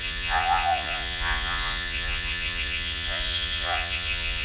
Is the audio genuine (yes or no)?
no